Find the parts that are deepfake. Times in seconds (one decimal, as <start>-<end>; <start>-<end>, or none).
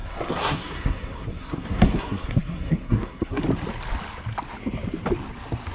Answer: 0.0-3.4